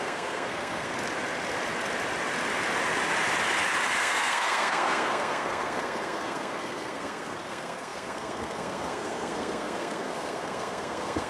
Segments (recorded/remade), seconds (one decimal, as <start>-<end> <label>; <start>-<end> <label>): 0.0-0.9 remade; 0.9-4.0 recorded; 4.0-11.3 remade